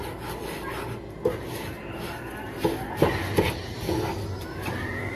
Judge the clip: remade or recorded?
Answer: recorded